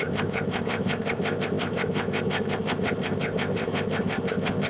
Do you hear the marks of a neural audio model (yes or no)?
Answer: yes